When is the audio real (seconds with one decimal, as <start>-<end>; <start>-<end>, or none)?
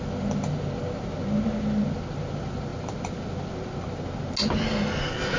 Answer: 0.0-5.4